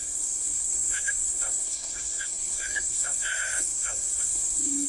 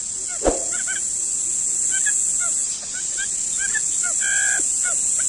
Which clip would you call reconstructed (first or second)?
first